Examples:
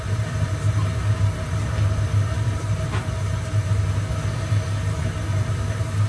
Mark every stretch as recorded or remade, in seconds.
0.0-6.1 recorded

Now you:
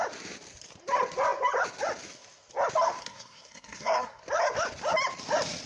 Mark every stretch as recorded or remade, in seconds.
0.0-3.0 recorded; 3.0-4.2 remade; 4.2-5.7 recorded